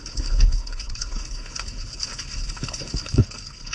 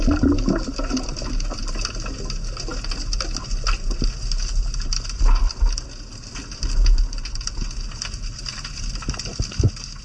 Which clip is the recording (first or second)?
second